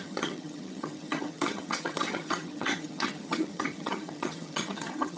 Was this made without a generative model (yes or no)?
no